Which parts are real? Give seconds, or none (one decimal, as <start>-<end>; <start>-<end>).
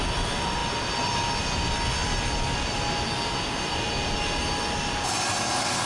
0.0-5.9